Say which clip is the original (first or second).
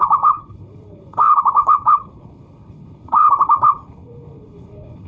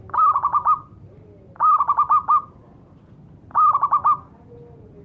second